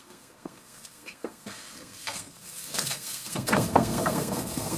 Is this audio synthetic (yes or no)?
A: yes